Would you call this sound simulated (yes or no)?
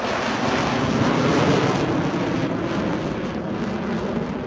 no